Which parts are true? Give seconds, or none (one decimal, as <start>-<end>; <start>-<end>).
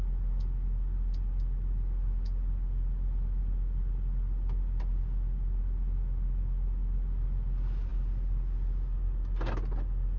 0.0-10.2